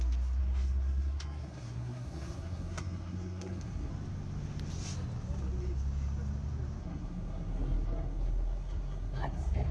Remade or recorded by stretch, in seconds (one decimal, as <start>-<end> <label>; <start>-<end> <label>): 0.0-0.4 recorded; 0.4-3.9 remade; 3.9-6.8 recorded; 6.8-9.7 remade